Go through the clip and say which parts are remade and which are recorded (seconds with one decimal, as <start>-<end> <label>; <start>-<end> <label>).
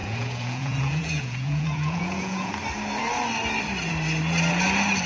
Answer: 0.0-2.5 remade; 2.5-5.1 recorded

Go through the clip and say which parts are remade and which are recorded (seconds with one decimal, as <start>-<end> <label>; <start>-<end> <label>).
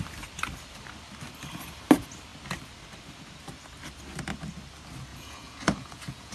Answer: 0.0-5.1 recorded; 5.1-6.3 remade